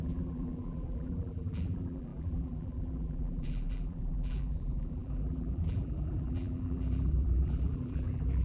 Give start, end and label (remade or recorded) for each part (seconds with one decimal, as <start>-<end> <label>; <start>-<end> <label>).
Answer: 0.0-8.4 remade